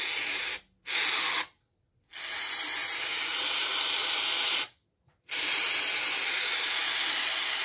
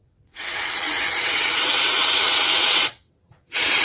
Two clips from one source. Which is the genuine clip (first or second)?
first